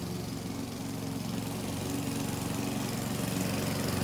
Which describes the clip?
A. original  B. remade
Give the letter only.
A